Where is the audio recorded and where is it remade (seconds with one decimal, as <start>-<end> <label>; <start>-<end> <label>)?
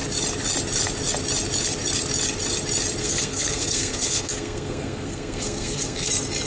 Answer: 0.0-3.0 recorded; 3.0-6.1 remade; 6.1-6.5 recorded